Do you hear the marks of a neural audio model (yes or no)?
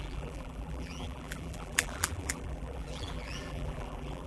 yes